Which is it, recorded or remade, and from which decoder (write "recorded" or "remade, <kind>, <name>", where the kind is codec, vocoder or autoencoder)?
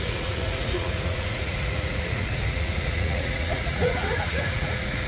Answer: remade, vocoder, Vocos